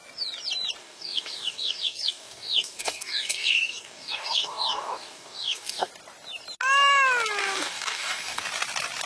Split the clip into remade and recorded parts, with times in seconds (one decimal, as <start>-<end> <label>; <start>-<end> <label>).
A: 0.0-0.8 recorded; 0.8-5.9 remade; 5.9-7.4 recorded; 7.4-8.4 remade; 8.4-9.1 recorded